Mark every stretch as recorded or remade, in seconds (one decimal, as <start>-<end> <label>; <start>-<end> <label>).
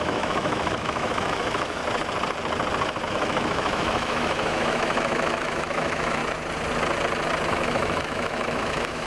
0.0-1.8 remade; 1.8-3.1 recorded; 3.1-6.2 remade; 6.2-7.5 recorded; 7.5-9.1 remade